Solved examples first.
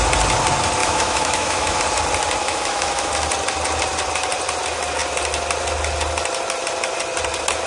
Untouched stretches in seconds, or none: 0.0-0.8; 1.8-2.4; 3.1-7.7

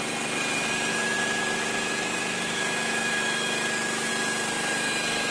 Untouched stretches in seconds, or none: 0.0-0.9; 4.1-5.3

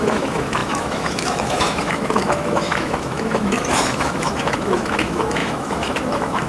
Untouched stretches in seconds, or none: none

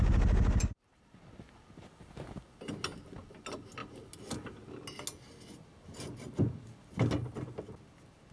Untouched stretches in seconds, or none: 0.0-8.3

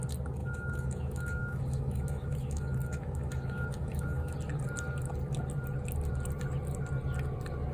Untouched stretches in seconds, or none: 0.0-0.4; 4.3-7.7

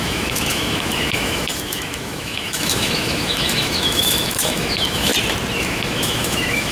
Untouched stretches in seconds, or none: 5.1-5.6

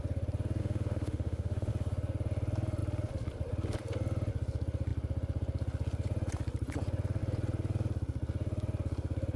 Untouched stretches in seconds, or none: 0.0-0.6; 1.7-9.4

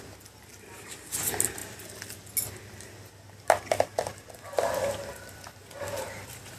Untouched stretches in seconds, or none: 0.0-6.6